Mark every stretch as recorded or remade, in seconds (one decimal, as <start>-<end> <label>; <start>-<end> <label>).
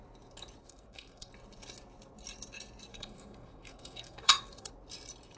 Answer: 0.0-0.6 recorded; 0.6-1.3 remade; 1.3-2.9 recorded; 2.9-4.7 remade; 4.7-5.4 recorded